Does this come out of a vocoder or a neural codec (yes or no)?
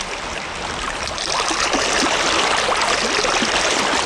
no